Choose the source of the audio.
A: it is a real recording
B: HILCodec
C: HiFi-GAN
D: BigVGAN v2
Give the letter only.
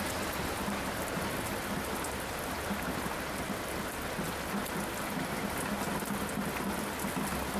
A